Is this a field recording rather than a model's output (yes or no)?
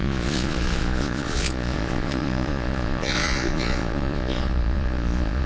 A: no